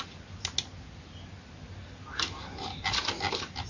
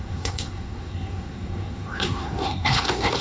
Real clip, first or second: first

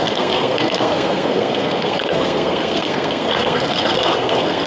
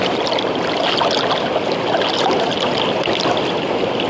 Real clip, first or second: second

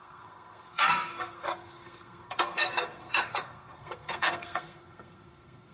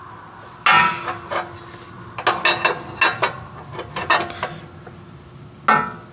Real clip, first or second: second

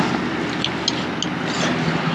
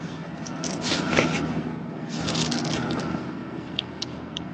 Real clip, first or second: first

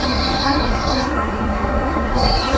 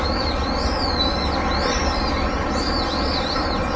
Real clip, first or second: second